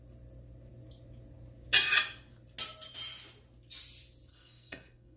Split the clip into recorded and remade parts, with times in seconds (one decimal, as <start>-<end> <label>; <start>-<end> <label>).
0.0-4.3 recorded; 4.3-5.2 remade